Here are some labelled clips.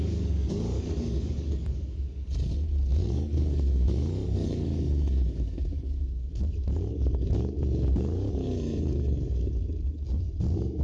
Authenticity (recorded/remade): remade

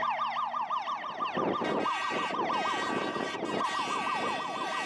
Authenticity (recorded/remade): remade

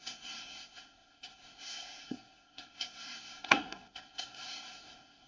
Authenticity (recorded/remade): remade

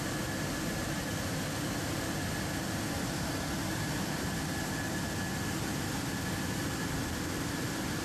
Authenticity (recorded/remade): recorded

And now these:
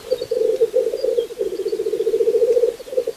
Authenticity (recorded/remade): recorded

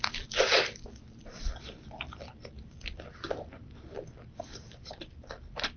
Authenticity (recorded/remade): recorded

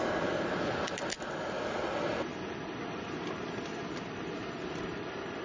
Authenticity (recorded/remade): recorded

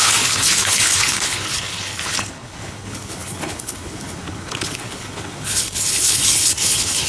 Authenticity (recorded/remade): remade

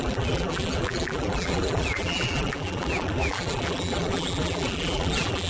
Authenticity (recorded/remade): remade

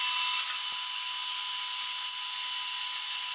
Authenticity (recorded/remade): recorded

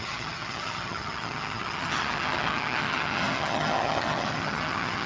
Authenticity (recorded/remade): remade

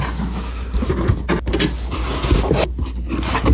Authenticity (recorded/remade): recorded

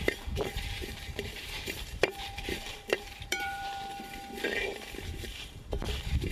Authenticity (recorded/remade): remade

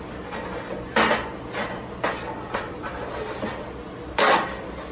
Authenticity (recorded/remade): recorded